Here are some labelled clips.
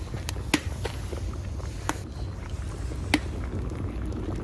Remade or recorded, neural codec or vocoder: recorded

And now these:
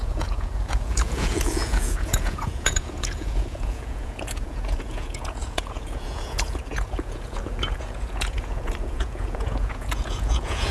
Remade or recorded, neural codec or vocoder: remade, vocoder, Vocos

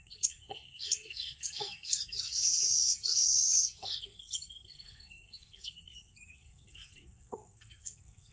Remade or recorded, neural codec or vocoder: remade, codec, SNAC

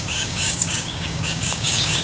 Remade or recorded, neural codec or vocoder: remade, codec, DAC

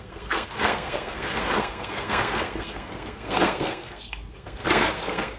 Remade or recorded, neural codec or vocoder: remade, codec, SNAC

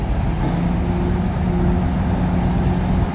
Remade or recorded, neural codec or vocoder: recorded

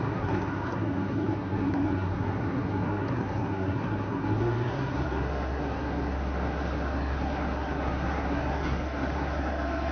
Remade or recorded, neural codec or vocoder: remade, codec, SNAC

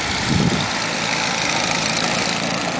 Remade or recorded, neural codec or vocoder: remade, vocoder, BigVGAN v2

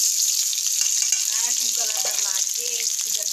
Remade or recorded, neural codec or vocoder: recorded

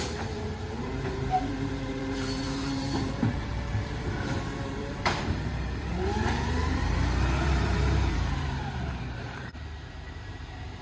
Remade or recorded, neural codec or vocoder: remade, vocoder, BigVGAN v2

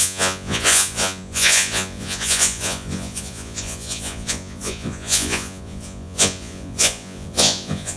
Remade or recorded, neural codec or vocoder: remade, vocoder, Vocos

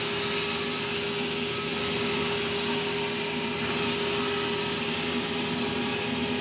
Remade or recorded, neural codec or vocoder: recorded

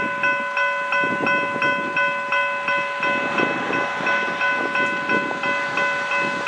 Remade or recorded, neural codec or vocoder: recorded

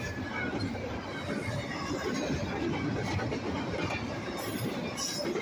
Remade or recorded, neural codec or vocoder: recorded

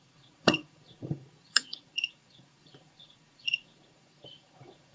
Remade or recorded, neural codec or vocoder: remade, vocoder, Vocos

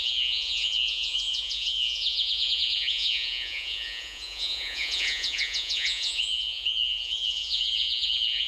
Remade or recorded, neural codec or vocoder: remade, vocoder, Vocos